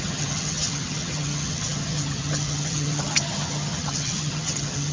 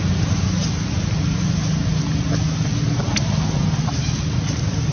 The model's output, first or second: first